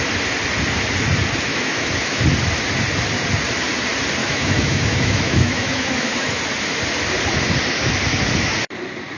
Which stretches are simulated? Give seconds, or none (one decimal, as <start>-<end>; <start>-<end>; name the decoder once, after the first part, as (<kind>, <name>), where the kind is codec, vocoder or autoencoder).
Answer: 1.5-2.2 (autoencoder, DAC-VAE); 4.2-6.4